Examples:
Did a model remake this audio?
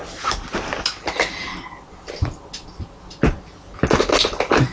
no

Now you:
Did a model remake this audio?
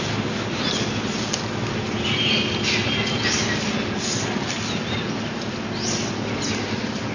no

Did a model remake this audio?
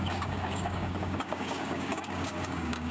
yes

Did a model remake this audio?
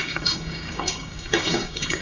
yes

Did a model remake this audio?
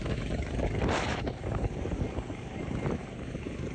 yes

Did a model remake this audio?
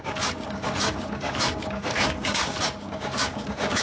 yes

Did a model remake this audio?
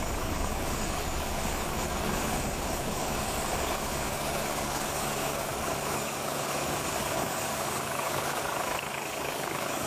yes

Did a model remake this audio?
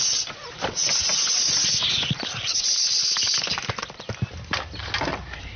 no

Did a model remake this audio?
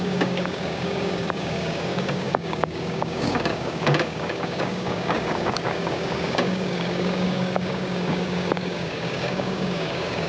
yes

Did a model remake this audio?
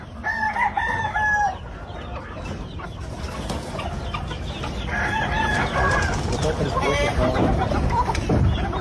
no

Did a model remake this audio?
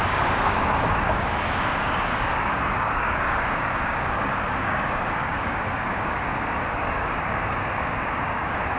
yes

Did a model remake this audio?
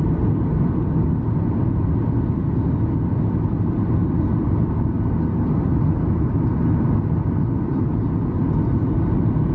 no